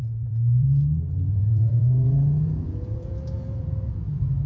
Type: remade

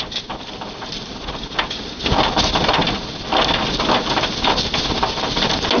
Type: recorded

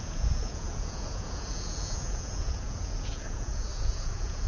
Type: remade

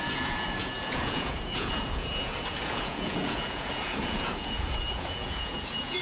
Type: remade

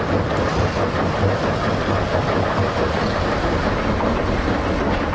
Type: recorded